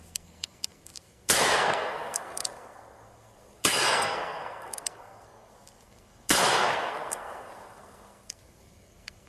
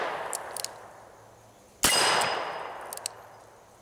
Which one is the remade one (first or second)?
first